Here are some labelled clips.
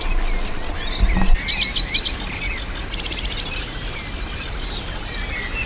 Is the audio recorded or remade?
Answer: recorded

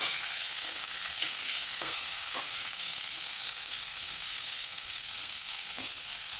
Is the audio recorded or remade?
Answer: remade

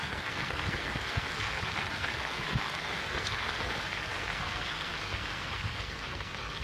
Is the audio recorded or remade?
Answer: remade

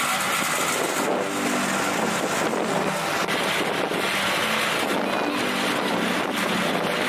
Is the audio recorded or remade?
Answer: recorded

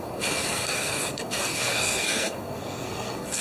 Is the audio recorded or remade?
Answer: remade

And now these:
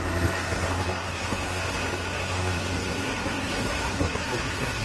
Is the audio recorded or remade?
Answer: remade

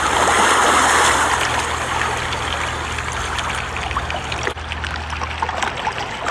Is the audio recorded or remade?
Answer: recorded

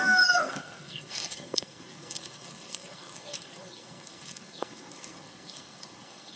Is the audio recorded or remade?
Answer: remade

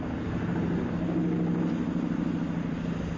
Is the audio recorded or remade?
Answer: recorded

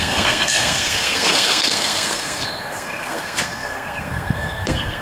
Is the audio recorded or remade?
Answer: remade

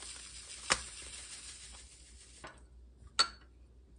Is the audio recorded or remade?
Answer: recorded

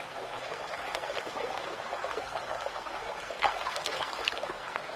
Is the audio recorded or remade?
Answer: remade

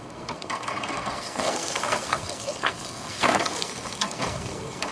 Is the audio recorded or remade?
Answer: remade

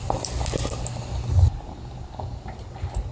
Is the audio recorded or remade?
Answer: recorded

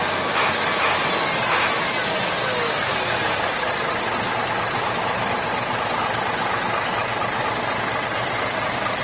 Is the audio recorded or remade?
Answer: recorded